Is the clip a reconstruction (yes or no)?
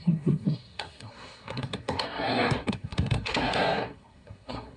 yes